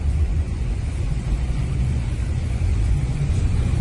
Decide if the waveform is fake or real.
fake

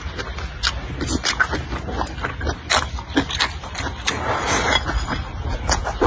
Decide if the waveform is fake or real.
real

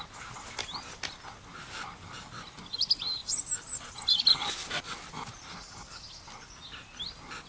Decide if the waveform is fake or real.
real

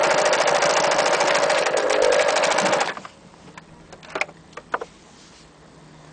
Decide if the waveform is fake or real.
real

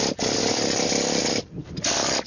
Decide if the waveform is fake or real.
real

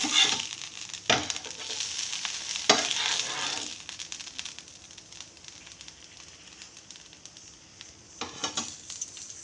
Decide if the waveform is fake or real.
real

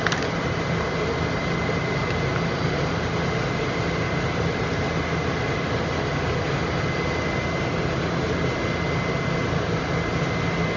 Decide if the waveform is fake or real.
real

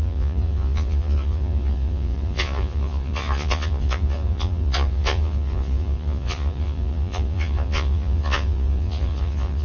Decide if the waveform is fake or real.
fake